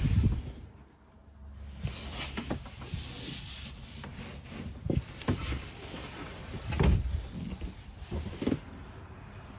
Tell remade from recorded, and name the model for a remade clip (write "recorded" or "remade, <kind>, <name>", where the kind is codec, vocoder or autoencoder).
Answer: recorded